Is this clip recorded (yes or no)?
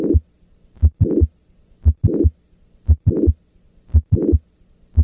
yes